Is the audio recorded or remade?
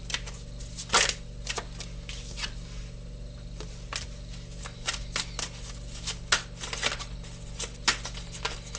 recorded